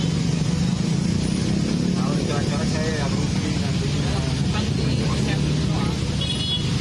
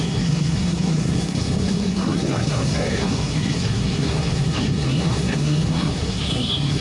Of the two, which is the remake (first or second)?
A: second